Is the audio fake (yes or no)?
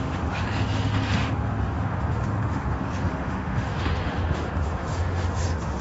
yes